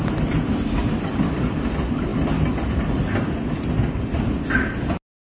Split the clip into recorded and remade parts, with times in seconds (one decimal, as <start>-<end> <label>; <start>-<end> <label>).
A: 0.0-5.3 recorded